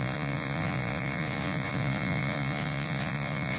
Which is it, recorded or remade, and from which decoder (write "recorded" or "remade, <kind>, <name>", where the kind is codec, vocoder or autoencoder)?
remade, vocoder, Vocos